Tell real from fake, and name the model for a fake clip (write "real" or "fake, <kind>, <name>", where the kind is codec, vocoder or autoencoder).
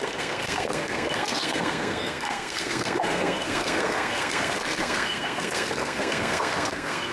fake, codec, SNAC